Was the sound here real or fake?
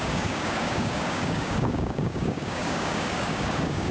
fake